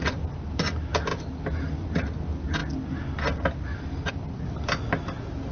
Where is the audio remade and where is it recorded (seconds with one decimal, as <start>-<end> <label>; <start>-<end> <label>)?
0.0-5.5 recorded